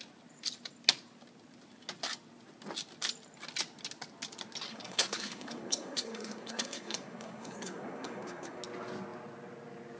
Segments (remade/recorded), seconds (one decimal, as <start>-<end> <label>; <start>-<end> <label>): 0.0-4.7 recorded; 4.7-8.6 remade; 8.6-10.0 recorded